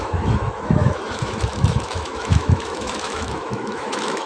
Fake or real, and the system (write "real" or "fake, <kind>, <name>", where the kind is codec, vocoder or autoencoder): fake, autoencoder, DAC-VAE